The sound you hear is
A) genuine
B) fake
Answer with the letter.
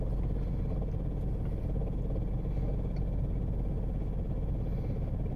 A